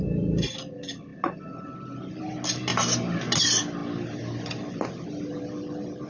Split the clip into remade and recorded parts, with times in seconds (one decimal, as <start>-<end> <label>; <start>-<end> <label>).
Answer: 0.0-6.1 recorded